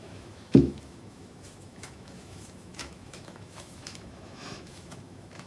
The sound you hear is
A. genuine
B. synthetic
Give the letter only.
B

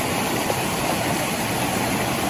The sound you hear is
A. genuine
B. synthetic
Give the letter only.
A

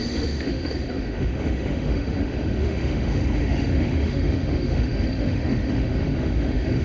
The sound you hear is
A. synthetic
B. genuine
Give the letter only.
A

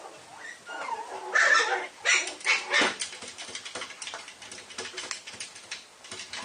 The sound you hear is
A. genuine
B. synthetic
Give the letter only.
A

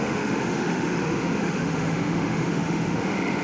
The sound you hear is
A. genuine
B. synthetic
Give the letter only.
B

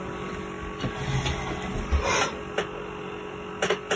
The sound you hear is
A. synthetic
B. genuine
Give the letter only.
B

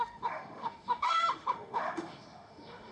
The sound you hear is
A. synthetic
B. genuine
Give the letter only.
A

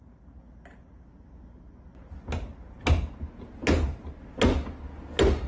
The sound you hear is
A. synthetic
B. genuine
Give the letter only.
B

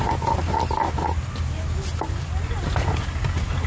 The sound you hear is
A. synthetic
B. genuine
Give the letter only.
B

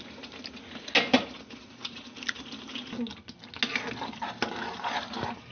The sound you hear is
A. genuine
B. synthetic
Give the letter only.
A